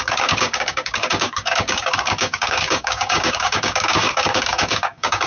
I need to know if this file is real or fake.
fake